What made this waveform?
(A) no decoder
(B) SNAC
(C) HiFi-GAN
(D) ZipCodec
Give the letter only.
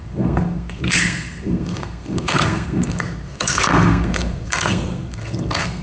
B